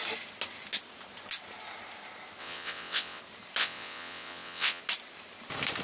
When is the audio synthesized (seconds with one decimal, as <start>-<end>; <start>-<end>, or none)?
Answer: 2.4-3.2; 3.6-4.8